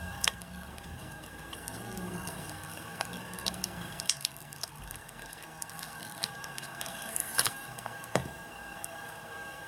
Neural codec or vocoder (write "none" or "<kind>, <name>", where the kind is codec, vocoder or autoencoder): codec, SNAC